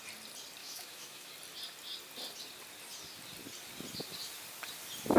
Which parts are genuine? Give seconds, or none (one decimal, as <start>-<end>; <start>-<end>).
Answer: 0.0-0.6; 1.3-5.2